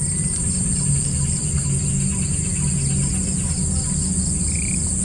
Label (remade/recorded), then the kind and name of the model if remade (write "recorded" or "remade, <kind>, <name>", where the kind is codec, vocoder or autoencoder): recorded